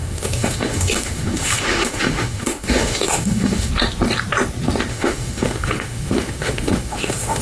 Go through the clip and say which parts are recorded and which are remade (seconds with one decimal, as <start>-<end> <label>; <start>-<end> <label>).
0.0-3.7 remade; 3.7-4.9 recorded; 4.9-7.4 remade